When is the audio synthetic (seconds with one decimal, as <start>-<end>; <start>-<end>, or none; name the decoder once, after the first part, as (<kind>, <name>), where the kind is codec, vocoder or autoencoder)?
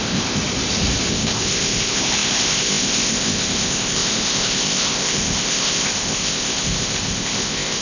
0.0-0.4 (codec, ZipCodec); 1.1-7.8